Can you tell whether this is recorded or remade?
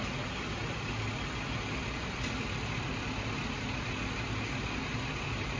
recorded